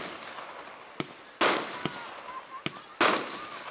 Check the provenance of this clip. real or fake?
real